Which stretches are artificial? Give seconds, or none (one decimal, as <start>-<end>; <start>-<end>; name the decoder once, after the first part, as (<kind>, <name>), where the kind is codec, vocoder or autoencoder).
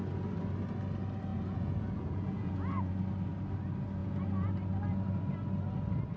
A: 1.3-2.9 (vocoder, Vocos); 4.0-4.5